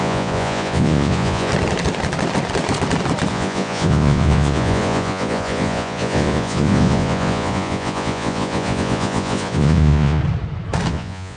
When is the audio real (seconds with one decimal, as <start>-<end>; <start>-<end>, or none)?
1.5-3.3; 10.2-10.9